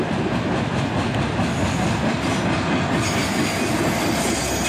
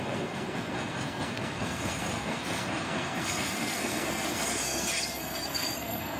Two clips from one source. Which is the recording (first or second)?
first